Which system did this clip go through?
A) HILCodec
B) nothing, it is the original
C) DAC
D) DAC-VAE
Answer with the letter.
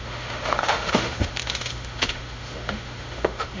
D